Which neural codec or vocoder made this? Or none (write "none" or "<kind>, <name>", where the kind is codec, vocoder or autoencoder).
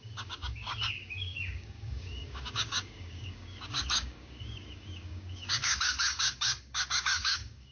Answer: codec, DAC